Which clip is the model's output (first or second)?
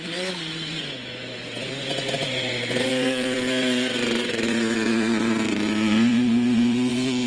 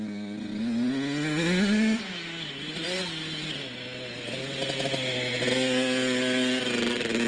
first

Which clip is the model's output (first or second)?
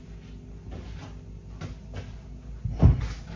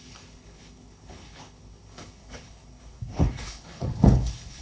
second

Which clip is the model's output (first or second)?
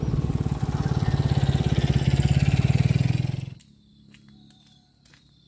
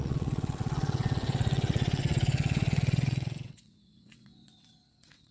second